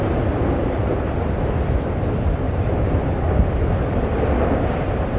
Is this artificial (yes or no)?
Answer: yes